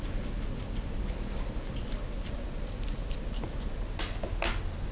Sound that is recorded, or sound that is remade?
recorded